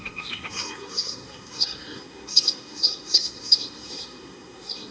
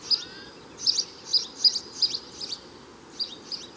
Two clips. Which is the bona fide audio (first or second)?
second